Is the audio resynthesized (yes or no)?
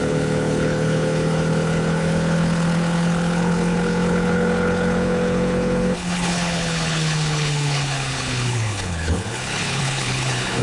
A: yes